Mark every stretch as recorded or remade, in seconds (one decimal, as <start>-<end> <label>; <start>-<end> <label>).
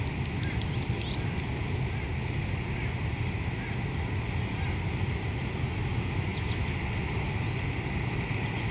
0.0-8.7 recorded